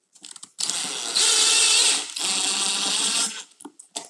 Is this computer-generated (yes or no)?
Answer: no